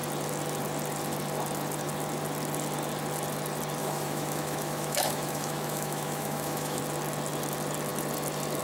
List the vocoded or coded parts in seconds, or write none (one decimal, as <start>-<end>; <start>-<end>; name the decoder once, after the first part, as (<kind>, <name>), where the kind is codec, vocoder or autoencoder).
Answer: 3.8-6.8 (autoencoder, DAC-VAE)

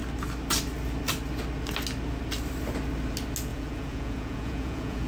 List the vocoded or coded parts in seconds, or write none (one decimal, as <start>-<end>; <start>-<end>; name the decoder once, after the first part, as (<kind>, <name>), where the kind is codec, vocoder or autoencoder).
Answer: 3.5-5.1 (vocoder, Vocos)

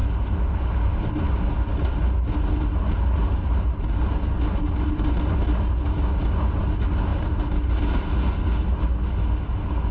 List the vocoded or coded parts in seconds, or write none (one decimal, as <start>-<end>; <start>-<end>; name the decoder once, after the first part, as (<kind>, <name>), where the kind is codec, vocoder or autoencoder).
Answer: 7.1-7.7 (vocoder, BigVGAN v2)

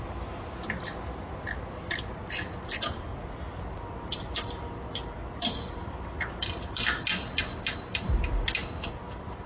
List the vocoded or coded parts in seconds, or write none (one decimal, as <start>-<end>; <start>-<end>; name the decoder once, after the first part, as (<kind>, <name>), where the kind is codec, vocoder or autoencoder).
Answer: 2.2-3.0 (vocoder, BigVGAN v2); 3.5-7.1; 8.6-9.5

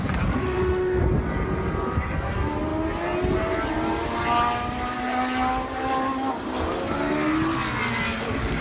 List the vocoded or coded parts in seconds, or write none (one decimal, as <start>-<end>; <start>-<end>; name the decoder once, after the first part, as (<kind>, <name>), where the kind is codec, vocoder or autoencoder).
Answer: 0.4-1.0 (autoencoder, DAC-VAE)